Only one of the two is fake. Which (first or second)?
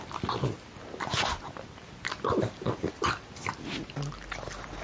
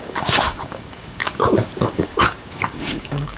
second